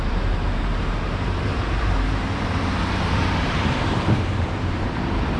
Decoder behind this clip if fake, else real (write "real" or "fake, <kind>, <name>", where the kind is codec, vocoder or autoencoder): fake, vocoder, BigVGAN v2